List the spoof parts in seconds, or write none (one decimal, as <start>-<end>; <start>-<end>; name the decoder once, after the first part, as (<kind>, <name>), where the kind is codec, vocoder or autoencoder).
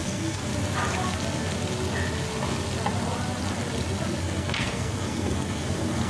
0.0-0.5 (codec, SNAC); 4.2-6.1